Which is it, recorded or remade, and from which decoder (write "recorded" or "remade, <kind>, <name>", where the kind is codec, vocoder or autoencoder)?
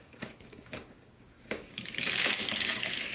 remade, codec, DAC